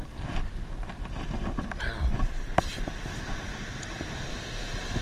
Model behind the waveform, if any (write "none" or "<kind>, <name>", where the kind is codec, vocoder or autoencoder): none